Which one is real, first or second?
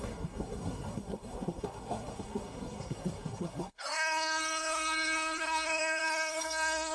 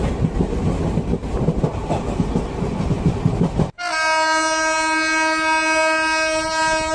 second